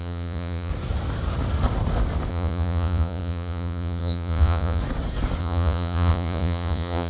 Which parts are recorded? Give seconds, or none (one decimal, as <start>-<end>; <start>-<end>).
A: 0.7-2.3; 4.8-5.4